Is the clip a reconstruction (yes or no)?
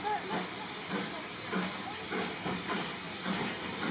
no